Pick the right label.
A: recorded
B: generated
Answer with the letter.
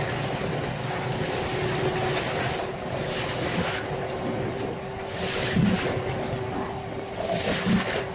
A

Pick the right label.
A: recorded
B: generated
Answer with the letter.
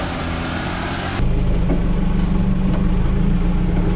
A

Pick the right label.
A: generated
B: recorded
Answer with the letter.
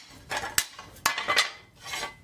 B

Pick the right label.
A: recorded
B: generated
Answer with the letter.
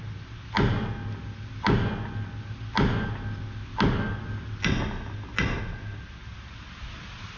A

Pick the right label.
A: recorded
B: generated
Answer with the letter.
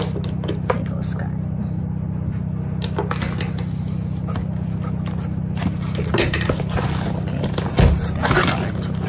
A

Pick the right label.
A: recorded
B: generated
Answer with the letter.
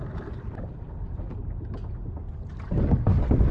A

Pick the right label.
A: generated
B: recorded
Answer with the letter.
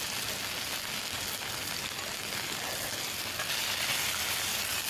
B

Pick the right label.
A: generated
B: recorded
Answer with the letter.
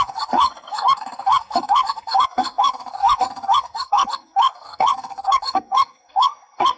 A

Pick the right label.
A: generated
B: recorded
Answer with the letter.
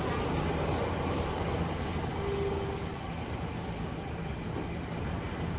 B